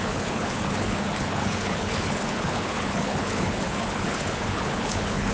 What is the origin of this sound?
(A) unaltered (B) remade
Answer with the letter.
B